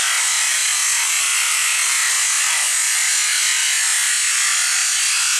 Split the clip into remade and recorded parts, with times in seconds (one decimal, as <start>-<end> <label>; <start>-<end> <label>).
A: 0.0-5.4 recorded